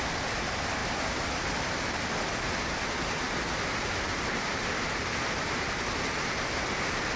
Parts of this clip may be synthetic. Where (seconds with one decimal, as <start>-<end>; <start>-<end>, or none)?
none